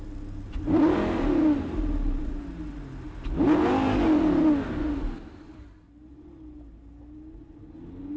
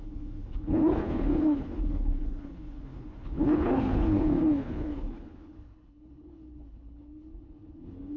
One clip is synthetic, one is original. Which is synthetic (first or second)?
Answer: second